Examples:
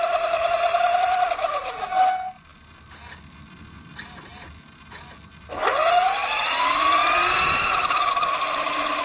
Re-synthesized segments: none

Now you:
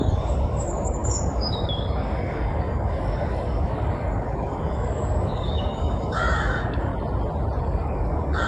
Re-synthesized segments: 0.0-6.9 (codec, DAC); 7.6-8.5

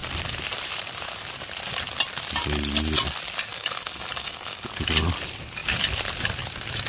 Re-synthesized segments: 3.5-4.7 (codec, DAC)

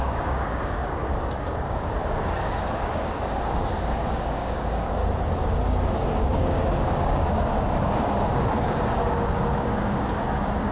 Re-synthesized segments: 0.0-5.0 (codec, DAC); 5.9-10.7

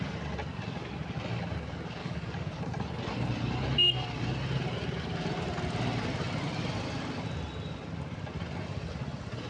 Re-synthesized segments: 2.0-2.6 (codec, DAC)

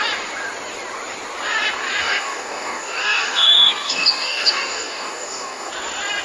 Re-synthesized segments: 2.0-5.7 (codec, DAC)

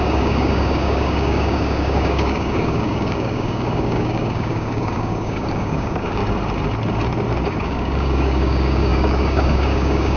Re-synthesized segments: 0.0-6.2 (codec, DAC); 7.6-10.2